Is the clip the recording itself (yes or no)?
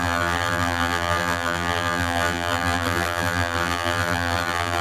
no